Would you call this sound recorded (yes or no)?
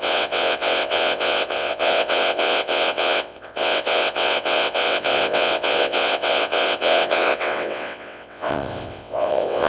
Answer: no